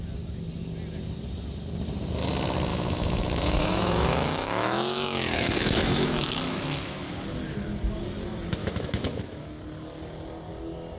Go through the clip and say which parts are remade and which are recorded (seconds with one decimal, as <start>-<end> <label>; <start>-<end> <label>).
0.0-2.7 recorded; 2.7-7.1 remade; 7.1-8.6 recorded; 8.6-9.6 remade; 9.6-11.0 recorded